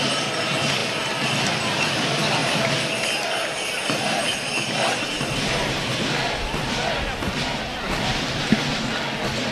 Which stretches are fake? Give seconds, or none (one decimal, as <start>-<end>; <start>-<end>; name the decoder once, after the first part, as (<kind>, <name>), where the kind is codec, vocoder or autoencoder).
7.7-8.7 (vocoder, BigVGAN v2)